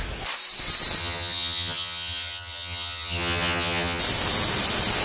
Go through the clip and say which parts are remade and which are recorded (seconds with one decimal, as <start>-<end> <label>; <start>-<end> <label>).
0.0-1.0 recorded; 1.0-4.0 remade; 4.0-5.0 recorded